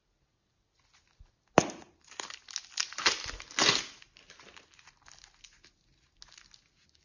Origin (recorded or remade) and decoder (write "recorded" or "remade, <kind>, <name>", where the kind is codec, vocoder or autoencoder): recorded